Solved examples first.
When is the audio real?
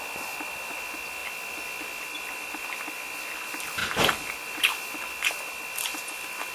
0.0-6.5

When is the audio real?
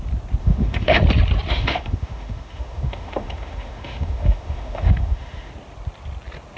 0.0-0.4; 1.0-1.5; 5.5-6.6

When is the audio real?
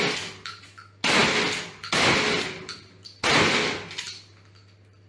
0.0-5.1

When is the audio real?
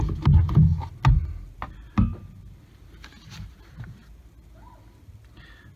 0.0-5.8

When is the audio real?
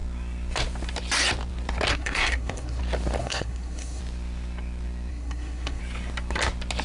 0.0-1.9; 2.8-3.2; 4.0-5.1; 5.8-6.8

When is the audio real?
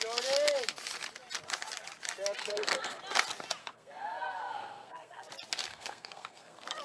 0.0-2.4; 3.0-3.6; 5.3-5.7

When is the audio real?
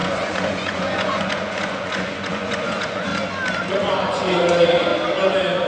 3.1-3.6; 4.9-5.7